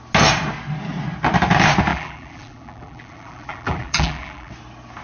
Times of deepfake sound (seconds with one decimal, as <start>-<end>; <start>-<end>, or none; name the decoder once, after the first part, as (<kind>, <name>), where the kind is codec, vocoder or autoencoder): 1.9-4.5 (vocoder, BigVGAN v2)